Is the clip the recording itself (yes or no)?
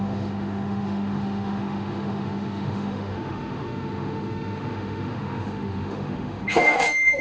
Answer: no